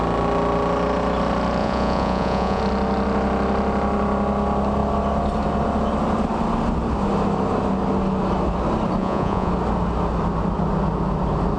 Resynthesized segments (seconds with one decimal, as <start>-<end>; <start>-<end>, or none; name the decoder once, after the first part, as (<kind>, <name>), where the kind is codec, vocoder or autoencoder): 1.6-2.6 (vocoder, Vocos); 9.0-9.5